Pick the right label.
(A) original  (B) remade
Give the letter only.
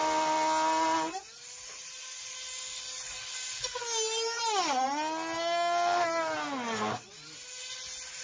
A